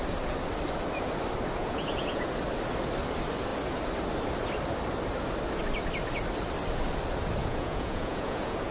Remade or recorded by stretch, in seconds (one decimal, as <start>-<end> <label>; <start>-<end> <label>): 0.0-1.6 recorded; 1.6-2.3 remade; 2.3-7.4 recorded; 7.4-8.7 remade